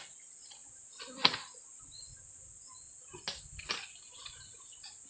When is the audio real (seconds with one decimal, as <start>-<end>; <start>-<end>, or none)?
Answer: 0.0-5.1